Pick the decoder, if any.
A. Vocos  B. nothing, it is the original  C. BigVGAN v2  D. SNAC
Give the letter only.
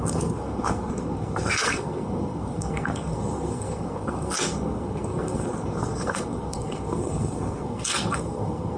D